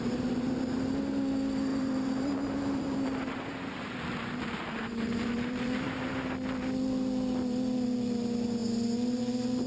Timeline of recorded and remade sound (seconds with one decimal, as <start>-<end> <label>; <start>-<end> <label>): 0.0-1.7 recorded; 1.7-6.2 remade; 6.2-9.7 recorded